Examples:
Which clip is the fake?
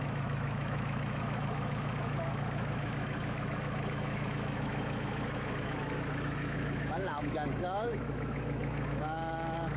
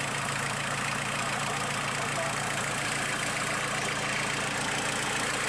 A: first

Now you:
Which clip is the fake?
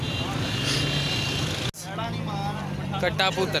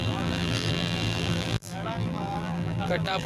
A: second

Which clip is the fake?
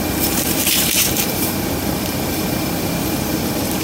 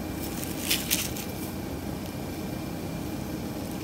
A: first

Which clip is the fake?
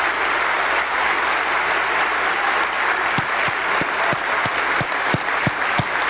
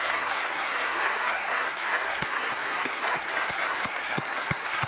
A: second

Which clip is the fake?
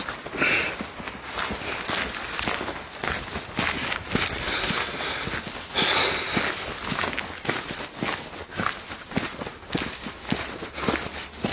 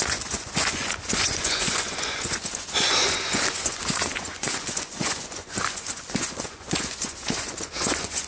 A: second